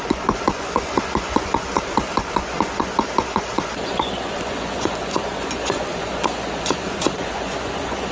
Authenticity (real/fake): fake